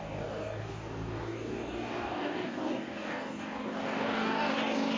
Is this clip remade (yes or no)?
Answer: yes